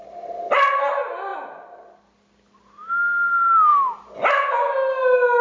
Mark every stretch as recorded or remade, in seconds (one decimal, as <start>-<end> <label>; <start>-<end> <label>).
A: 0.0-5.4 recorded